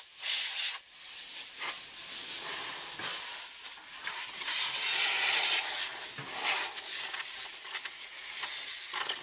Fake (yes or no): no